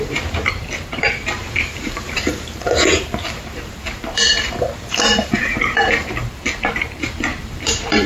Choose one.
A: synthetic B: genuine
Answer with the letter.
A